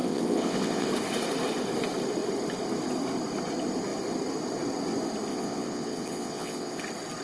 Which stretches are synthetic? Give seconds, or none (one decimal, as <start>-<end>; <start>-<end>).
0.0-0.9; 5.3-6.8